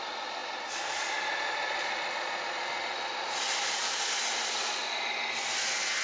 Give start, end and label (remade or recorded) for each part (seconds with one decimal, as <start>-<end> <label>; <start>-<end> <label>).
0.0-6.0 recorded

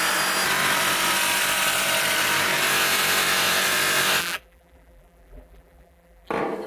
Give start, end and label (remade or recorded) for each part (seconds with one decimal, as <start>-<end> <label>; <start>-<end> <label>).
0.0-4.2 recorded; 4.2-6.3 remade; 6.3-6.7 recorded

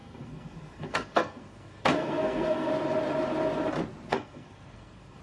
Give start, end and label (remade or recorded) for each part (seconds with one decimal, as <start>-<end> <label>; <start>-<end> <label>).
0.0-2.7 remade; 2.7-4.1 recorded; 4.1-5.2 remade